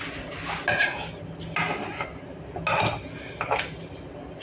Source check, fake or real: real